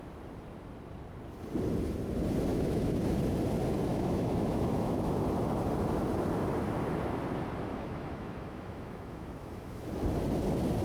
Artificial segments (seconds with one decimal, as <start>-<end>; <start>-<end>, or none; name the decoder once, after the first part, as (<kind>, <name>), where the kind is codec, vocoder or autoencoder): 2.5-3.0 (autoencoder, DAC-VAE); 3.9-5.2; 7.7-9.9